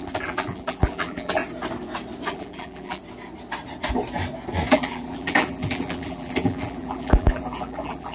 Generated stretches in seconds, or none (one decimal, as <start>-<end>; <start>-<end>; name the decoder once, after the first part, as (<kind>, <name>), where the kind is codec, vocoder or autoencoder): 0.0-1.4 (vocoder, BigVGAN v2); 2.3-3.0; 4.7-8.1